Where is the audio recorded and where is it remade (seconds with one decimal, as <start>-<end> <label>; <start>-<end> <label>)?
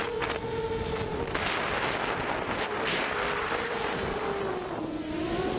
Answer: 0.0-5.6 recorded